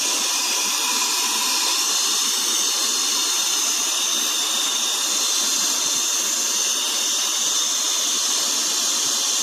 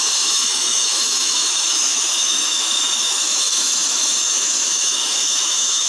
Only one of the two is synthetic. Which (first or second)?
second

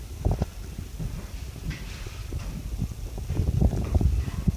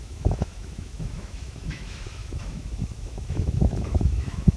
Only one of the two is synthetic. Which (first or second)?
second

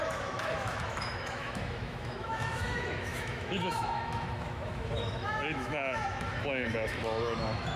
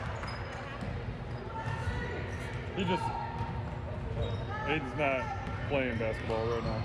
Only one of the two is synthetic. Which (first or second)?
first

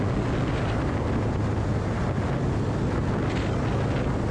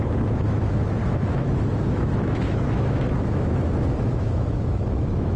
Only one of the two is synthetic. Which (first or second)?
second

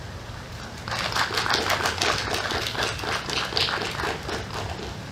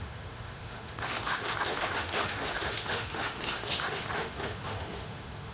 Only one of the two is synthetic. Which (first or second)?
second